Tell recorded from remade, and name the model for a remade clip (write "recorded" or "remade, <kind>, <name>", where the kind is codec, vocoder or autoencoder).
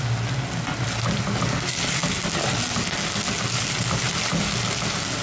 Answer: recorded